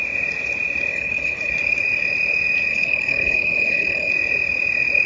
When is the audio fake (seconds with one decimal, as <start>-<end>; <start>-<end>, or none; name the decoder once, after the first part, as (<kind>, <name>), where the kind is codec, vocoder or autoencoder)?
0.9-1.5 (codec, HILCodec); 2.7-4.1